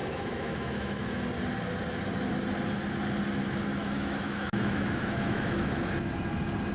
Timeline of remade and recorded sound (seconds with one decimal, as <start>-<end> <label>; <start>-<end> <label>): 0.0-1.2 remade; 1.2-3.8 recorded; 3.8-5.9 remade; 5.9-6.7 recorded